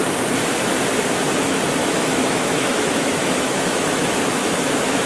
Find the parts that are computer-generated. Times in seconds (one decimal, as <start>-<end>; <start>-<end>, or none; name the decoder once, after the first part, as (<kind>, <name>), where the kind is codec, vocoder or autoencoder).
1.8-5.1 (autoencoder, DAC-VAE)